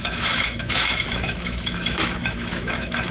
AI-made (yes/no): yes